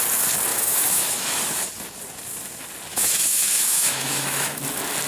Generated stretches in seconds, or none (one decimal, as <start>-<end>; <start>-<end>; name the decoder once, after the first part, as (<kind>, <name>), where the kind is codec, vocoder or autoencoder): 0.5-1.4 (autoencoder, DAC-VAE); 2.9-4.6